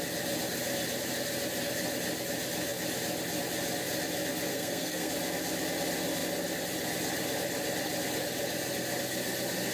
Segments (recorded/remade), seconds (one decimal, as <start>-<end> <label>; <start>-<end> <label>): 0.0-4.5 recorded; 4.5-5.1 remade; 5.1-9.7 recorded